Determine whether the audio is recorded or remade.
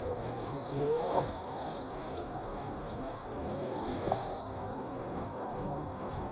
remade